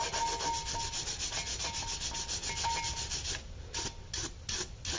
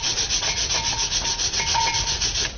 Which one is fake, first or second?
second